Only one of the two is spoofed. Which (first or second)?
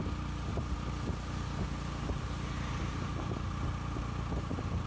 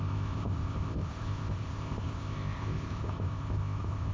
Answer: second